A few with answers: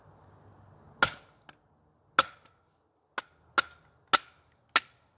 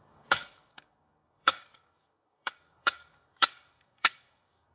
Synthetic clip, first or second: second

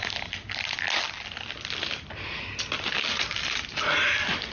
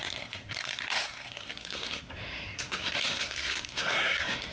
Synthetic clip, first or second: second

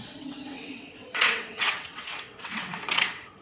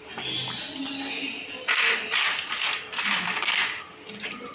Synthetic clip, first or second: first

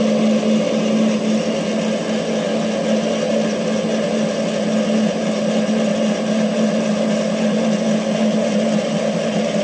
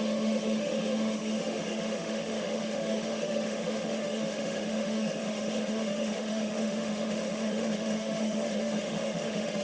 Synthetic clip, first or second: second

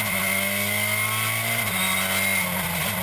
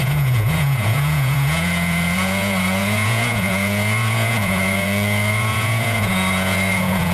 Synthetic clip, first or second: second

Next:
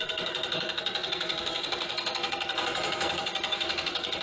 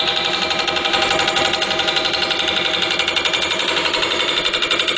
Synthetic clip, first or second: first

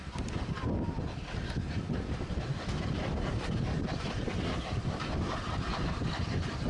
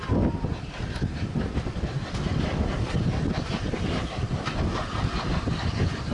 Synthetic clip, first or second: first